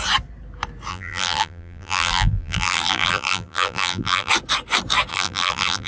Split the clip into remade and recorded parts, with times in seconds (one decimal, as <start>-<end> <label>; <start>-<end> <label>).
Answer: 0.0-0.9 recorded; 0.9-4.3 remade; 4.3-5.1 recorded; 5.1-5.9 remade